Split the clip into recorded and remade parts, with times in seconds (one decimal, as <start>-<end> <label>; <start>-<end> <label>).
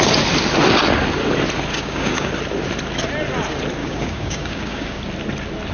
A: 0.0-1.7 recorded; 1.7-2.3 remade; 2.3-3.8 recorded; 3.8-5.0 remade; 5.0-5.7 recorded